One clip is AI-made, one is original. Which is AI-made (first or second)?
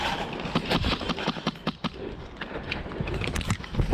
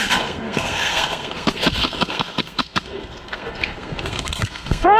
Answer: second